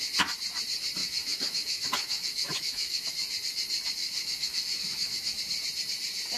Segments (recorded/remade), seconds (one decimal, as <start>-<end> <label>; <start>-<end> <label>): 0.0-1.0 recorded; 1.0-3.1 remade; 3.1-4.0 recorded; 4.0-5.4 remade; 5.4-6.4 recorded